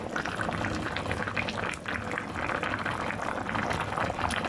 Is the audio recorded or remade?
recorded